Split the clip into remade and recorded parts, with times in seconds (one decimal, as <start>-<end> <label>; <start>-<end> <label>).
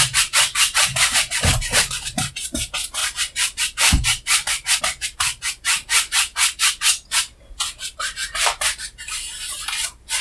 0.0-6.3 remade; 6.3-7.9 recorded; 7.9-10.2 remade